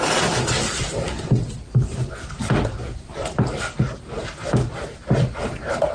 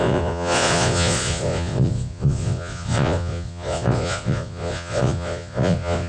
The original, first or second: first